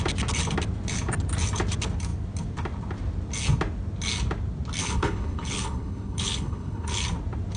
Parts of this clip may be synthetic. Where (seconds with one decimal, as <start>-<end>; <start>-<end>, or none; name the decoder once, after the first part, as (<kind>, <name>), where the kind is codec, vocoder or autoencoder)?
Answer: 4.8-7.0 (codec, HILCodec)